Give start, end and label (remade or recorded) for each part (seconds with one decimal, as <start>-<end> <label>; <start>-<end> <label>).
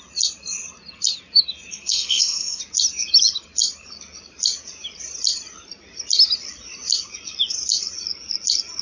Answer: 0.0-1.7 recorded; 1.7-2.6 remade; 2.6-8.8 recorded